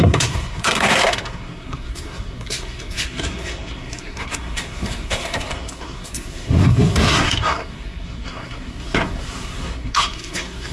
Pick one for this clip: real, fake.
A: fake